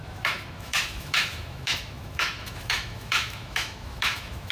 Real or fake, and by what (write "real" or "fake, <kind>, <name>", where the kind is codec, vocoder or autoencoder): fake, autoencoder, DAC-VAE